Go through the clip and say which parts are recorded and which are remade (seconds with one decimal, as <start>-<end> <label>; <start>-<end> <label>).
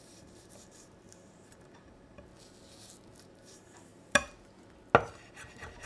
0.0-2.3 remade; 2.3-3.2 recorded; 3.2-3.9 remade; 3.9-5.3 recorded; 5.3-5.9 remade